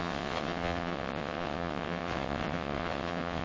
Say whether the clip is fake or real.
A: fake